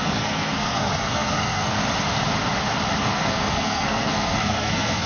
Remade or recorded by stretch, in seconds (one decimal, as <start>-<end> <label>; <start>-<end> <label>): 0.0-1.7 remade; 1.7-3.0 recorded; 3.0-5.1 remade